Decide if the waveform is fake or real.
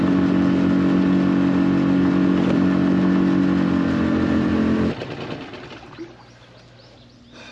real